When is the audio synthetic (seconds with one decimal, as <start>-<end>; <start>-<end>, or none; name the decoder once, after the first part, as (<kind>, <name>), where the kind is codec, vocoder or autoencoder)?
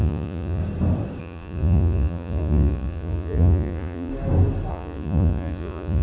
0.0-0.6 (vocoder, Vocos); 1.2-4.1; 4.7-6.0